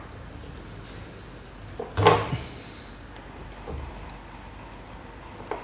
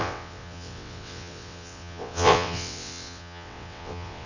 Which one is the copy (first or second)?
second